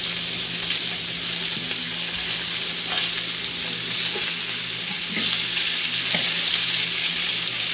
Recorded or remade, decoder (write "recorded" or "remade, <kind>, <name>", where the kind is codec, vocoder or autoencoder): recorded